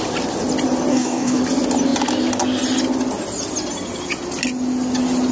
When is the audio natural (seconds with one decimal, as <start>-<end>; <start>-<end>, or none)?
0.0-0.9; 1.4-5.3